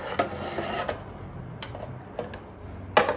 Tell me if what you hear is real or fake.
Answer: real